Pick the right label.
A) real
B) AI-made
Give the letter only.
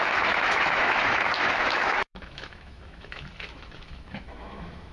B